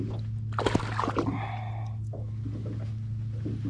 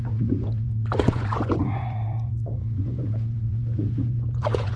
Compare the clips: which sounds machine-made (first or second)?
second